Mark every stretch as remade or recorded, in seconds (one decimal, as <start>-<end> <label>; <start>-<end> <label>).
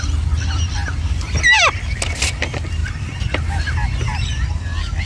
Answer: 0.0-5.1 recorded